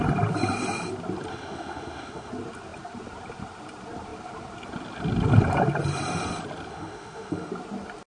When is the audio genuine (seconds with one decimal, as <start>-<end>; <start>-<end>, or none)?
0.0-1.3; 2.3-6.7; 7.5-8.1